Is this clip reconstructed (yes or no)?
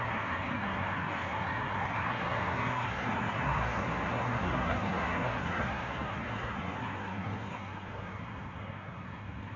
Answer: yes